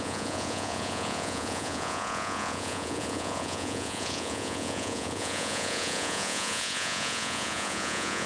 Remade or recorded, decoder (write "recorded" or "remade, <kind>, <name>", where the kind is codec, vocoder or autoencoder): remade, vocoder, Vocos